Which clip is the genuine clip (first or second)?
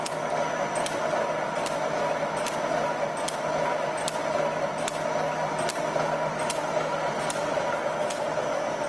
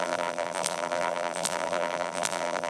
first